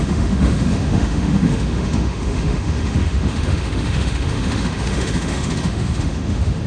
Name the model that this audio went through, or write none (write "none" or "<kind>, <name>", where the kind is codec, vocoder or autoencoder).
autoencoder, DAC-VAE